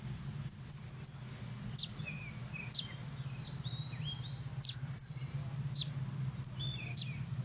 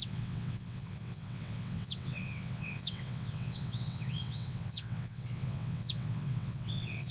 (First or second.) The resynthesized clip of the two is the second